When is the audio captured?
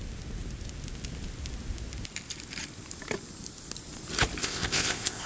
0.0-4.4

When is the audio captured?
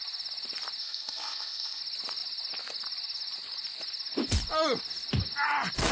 0.0-0.8; 1.8-5.9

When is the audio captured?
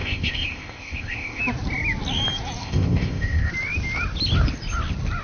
1.4-2.6; 3.5-5.2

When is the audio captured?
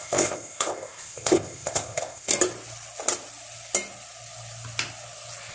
2.3-5.5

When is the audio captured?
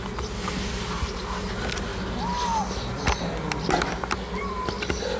0.0-5.2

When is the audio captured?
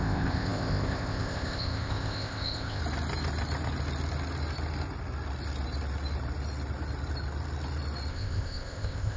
2.8-8.1